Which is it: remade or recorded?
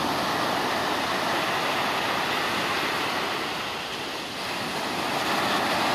recorded